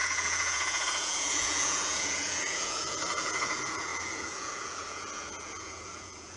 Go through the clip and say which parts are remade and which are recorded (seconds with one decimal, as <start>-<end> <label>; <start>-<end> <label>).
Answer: 0.0-6.4 remade